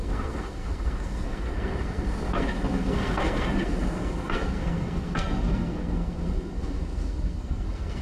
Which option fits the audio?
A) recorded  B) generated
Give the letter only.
B